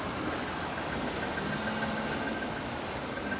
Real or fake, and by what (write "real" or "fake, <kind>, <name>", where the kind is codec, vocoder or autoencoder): real